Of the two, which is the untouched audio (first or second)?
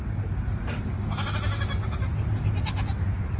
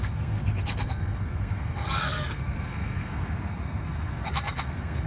first